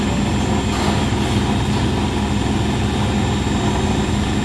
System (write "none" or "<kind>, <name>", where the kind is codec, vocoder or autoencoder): none